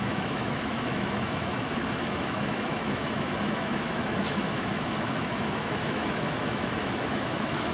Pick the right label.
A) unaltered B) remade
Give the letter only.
B